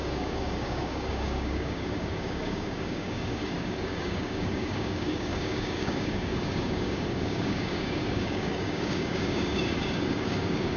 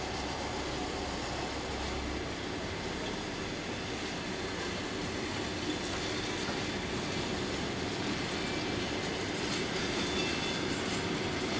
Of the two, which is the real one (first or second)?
second